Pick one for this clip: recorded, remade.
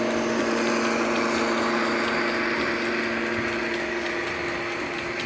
recorded